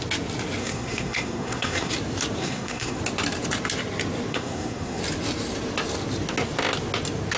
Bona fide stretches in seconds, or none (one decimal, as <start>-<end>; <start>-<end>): 0.0-0.6; 1.9-2.4; 3.0-4.3; 5.0-7.4